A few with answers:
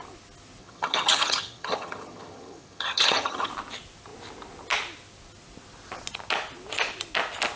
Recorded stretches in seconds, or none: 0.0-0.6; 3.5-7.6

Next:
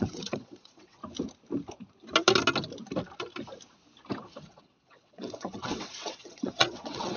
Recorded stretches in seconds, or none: 1.0-4.2